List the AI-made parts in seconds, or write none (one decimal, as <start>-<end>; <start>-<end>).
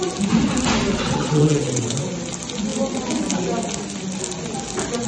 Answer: 0.9-2.1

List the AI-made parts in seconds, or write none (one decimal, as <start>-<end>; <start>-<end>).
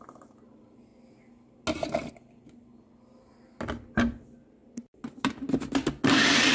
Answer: none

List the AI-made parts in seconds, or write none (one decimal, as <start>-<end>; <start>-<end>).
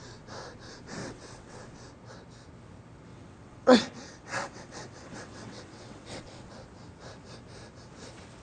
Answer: 1.0-1.6; 3.1-6.5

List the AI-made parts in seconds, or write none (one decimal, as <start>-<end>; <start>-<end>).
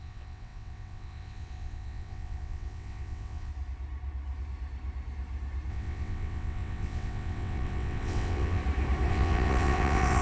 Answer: 0.0-3.5; 5.7-8.6; 9.1-10.2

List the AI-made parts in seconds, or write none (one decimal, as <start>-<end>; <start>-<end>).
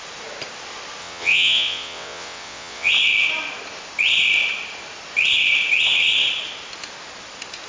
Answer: 1.0-2.9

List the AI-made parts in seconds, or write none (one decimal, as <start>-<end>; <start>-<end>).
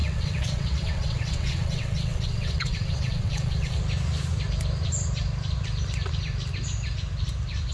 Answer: 0.0-3.8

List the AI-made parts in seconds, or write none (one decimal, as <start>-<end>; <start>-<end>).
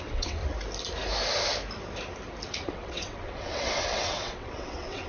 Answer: 0.0-0.4; 2.7-5.1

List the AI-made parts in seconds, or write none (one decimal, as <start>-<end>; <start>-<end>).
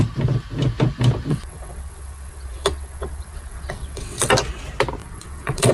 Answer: 1.3-4.3; 5.0-5.7